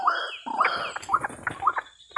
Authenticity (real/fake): real